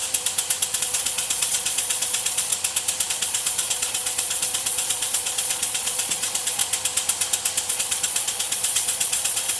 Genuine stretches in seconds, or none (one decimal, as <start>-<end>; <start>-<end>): 0.0-0.8; 2.5-3.1; 6.6-7.7